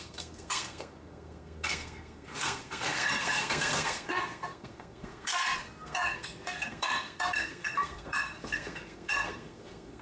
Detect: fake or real fake